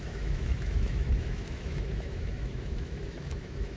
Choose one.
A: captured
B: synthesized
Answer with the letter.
B